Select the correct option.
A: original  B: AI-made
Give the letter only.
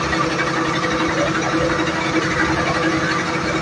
A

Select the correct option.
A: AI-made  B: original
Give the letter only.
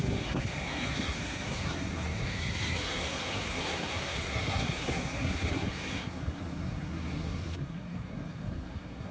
A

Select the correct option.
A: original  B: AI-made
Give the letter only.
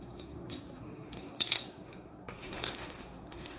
B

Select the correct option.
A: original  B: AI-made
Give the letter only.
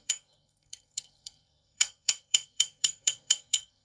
B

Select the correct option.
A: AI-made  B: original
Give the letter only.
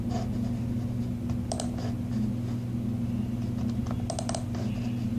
B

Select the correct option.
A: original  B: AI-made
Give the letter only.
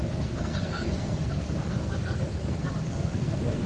B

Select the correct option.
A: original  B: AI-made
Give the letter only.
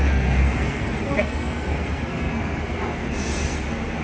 B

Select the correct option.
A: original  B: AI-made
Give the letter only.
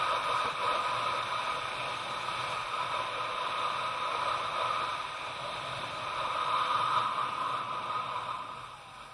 A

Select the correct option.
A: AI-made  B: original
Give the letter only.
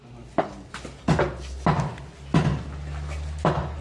B